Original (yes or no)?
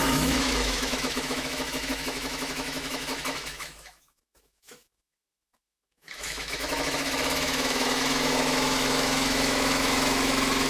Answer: no